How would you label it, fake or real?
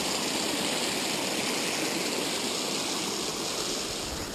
real